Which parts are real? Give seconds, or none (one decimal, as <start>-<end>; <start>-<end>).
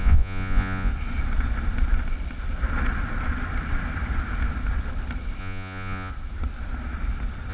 0.9-5.4; 6.1-7.5